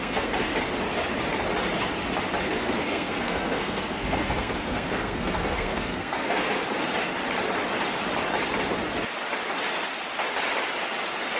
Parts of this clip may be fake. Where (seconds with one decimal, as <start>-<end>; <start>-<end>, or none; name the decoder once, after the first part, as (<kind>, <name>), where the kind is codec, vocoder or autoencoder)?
0.0-0.5 (codec, SNAC); 2.4-6.6